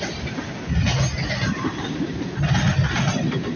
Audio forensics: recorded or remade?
recorded